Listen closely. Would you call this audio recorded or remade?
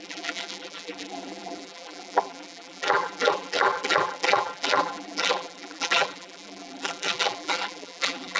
remade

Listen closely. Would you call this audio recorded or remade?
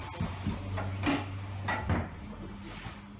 recorded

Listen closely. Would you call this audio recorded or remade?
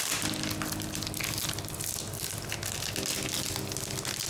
recorded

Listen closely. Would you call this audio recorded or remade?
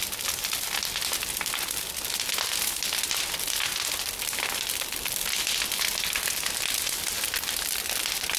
recorded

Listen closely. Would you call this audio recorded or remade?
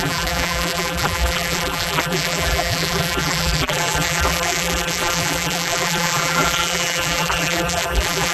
remade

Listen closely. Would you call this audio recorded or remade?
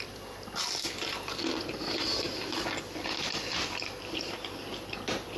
recorded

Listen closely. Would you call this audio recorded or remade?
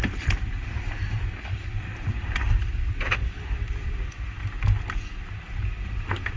recorded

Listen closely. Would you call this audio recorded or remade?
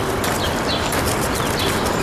recorded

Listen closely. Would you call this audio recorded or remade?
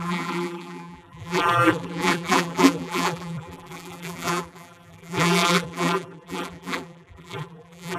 remade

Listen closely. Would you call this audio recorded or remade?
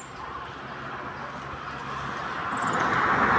recorded